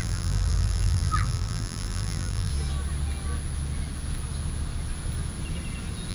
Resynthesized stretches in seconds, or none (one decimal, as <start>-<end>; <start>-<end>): 0.0-2.5